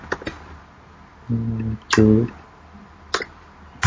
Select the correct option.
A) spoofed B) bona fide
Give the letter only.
B